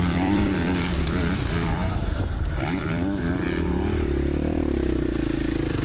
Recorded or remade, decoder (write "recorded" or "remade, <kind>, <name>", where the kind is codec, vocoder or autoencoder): remade, vocoder, BigVGAN v2